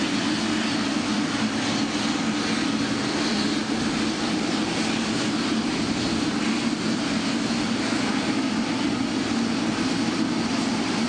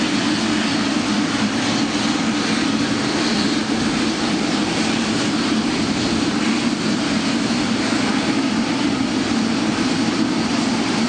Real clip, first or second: first